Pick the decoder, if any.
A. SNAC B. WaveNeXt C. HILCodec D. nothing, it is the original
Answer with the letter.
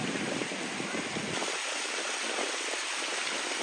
D